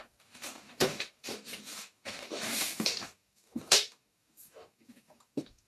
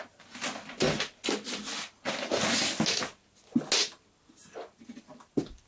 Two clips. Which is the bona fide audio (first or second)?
second